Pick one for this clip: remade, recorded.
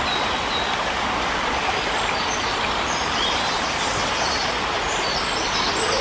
recorded